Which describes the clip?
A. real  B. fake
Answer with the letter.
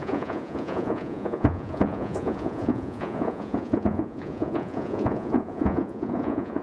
B